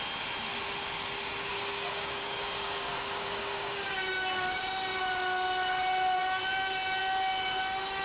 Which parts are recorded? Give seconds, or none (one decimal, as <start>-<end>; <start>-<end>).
0.0-1.5; 4.6-8.0